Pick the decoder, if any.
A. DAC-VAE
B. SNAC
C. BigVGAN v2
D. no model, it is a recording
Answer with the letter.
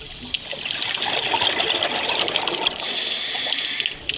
D